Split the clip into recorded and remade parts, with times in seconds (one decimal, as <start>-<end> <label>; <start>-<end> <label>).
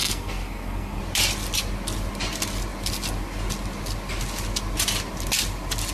0.0-1.0 remade; 1.0-5.9 recorded